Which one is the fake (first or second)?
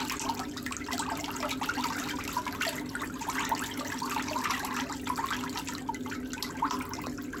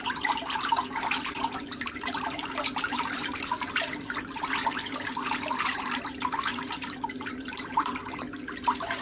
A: second